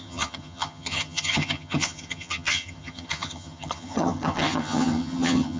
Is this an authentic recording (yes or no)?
no